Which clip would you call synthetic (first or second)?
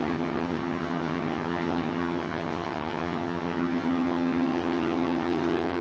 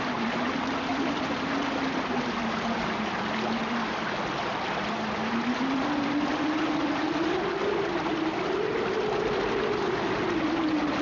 first